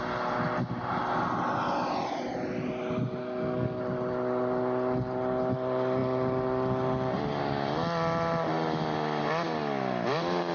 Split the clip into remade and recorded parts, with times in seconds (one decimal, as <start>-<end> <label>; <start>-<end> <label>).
0.0-3.2 recorded; 3.2-3.8 remade; 3.8-10.5 recorded